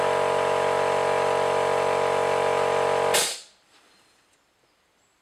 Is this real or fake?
real